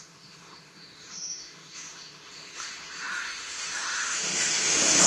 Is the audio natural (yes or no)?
no